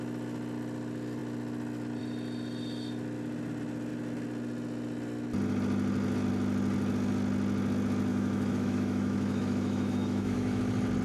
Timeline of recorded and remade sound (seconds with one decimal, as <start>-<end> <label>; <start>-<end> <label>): 0.0-8.1 recorded; 8.1-10.6 remade; 10.6-11.0 recorded